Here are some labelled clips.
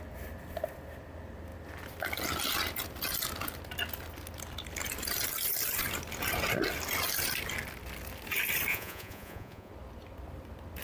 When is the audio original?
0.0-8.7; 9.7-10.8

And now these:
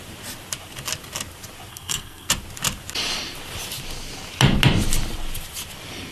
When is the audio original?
0.0-1.7; 2.3-6.1

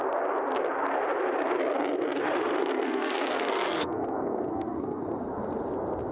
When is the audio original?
0.0-2.5; 5.0-6.1

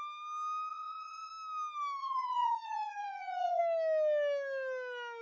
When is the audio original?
0.0-0.7; 1.3-2.0; 3.6-5.2

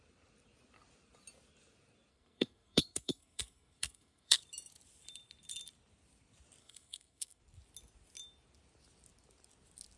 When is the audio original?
0.0-2.1; 4.4-6.6; 7.4-10.0

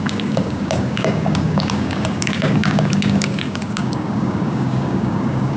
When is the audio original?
none

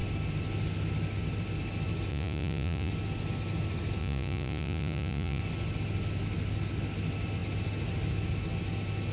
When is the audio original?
0.0-2.1; 2.9-4.0; 5.4-9.1